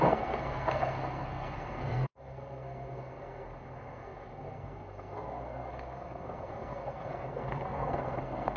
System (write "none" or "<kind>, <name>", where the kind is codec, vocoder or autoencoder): codec, SNAC